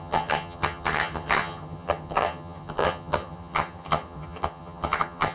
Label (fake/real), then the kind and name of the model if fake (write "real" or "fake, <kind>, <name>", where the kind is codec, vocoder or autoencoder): fake, vocoder, HiFi-GAN